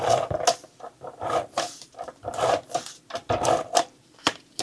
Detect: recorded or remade recorded